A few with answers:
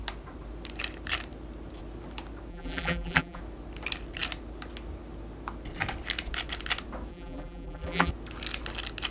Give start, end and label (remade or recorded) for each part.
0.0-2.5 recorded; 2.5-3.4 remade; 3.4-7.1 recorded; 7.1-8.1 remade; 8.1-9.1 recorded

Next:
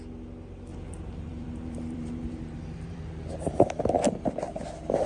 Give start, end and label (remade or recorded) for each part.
0.0-0.7 recorded; 0.7-3.6 remade; 3.6-5.1 recorded